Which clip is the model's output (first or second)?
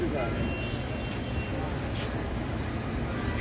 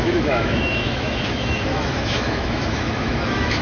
second